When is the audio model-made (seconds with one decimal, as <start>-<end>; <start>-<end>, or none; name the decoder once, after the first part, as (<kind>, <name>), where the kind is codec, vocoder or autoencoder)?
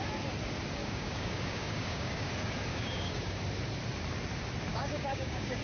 0.8-2.3 (codec, DAC); 2.7-3.4; 4.7-5.6